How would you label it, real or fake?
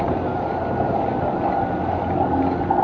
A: real